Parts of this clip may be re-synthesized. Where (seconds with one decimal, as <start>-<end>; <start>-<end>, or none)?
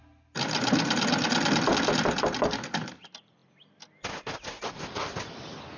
none